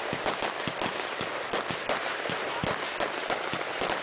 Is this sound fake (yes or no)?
no